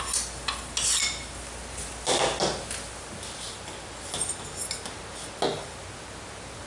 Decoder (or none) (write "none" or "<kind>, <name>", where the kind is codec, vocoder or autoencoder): none